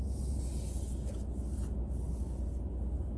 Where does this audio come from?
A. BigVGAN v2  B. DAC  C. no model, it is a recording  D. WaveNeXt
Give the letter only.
C